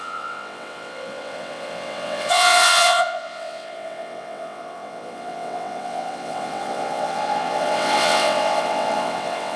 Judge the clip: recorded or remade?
remade